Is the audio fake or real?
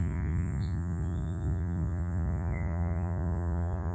fake